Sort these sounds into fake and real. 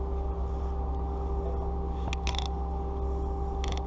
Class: real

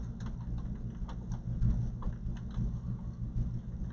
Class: real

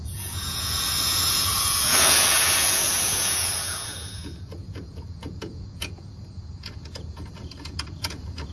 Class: fake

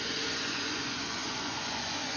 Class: fake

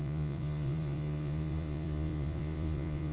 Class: fake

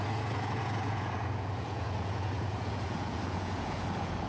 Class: fake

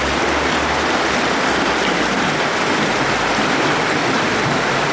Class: real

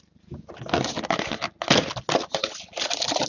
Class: real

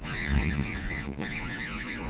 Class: fake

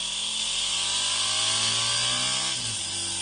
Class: real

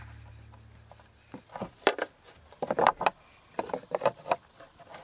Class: real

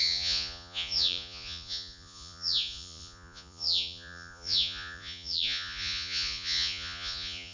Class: fake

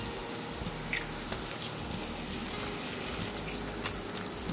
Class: real